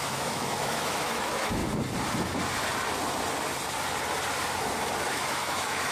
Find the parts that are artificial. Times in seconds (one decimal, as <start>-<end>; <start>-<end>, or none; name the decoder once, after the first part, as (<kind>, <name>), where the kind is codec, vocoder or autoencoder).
0.0-1.6 (autoencoder, DAC-VAE); 5.1-5.9